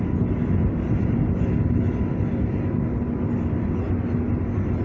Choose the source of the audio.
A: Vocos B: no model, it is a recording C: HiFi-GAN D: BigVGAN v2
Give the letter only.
B